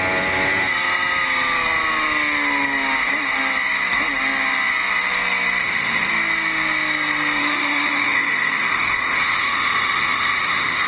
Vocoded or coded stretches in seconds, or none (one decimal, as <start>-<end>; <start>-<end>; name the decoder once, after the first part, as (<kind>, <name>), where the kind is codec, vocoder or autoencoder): 5.6-6.1 (autoencoder, DAC-VAE); 7.4-10.9